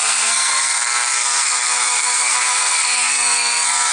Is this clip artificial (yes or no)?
yes